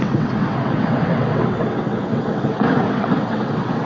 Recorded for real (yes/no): no